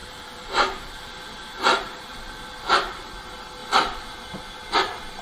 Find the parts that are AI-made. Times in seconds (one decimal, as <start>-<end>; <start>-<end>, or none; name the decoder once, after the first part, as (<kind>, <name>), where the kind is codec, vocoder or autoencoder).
0.0-3.1 (vocoder, BigVGAN v2); 3.6-4.2